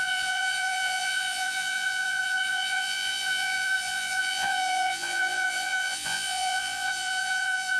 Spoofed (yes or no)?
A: yes